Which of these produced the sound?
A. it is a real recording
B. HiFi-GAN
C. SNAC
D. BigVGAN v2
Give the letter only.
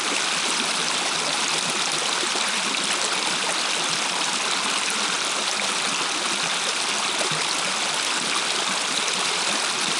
A